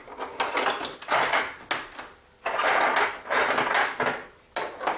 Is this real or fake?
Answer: real